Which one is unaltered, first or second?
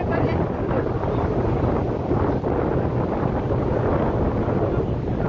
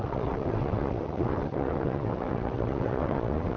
first